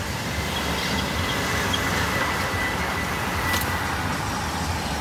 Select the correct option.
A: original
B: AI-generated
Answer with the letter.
A